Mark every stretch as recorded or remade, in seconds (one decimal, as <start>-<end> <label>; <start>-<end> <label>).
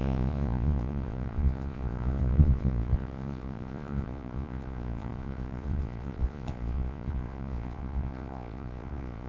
0.0-9.3 remade